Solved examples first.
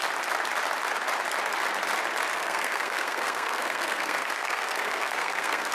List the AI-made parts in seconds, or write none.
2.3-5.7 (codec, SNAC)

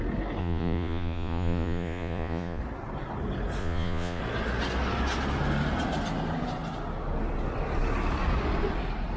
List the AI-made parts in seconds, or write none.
0.4-2.6 (vocoder, Vocos); 3.6-4.2

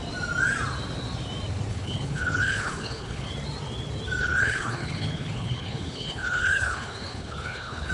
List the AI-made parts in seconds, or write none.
1.7-3.3 (codec, HILCodec); 4.2-7.9

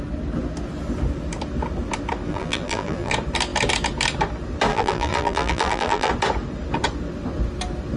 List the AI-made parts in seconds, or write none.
2.3-3.1 (vocoder, BigVGAN v2); 4.7-6.1

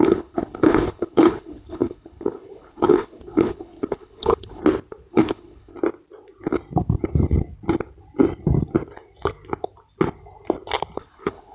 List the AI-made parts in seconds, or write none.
0.0-4.6 (codec, HILCodec); 5.1-5.7; 11.0-11.5